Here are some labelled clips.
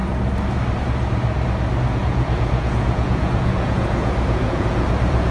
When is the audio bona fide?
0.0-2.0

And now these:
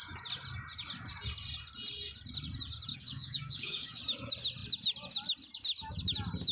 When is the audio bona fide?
0.0-2.9; 4.0-6.5

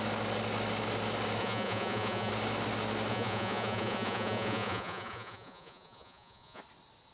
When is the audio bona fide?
0.0-1.4; 2.3-3.1; 6.6-7.1

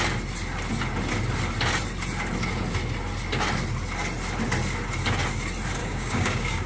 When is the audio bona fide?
0.0-5.8